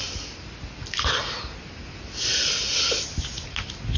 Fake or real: real